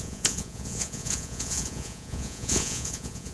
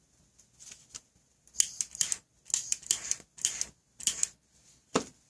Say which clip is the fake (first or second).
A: first